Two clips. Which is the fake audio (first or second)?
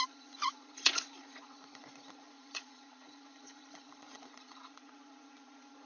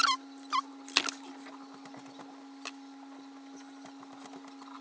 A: first